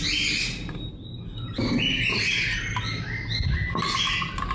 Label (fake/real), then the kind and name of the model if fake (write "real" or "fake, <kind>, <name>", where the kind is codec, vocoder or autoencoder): real